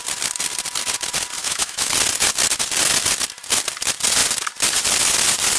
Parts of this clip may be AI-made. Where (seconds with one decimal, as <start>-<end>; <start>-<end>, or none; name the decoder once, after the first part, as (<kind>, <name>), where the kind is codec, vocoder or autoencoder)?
1.4-1.9 (autoencoder, DAC-VAE)